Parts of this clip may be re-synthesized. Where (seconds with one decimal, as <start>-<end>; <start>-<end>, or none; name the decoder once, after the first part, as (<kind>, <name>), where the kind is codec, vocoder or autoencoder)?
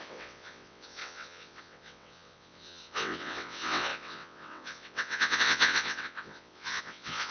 0.0-7.3 (vocoder, WaveNeXt)